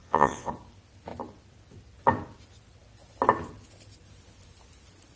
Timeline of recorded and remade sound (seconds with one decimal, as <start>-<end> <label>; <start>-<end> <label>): 0.0-0.5 remade; 0.5-5.2 recorded